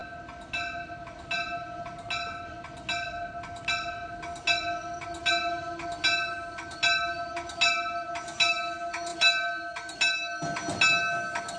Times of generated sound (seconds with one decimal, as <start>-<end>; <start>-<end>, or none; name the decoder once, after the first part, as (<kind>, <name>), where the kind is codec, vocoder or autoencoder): none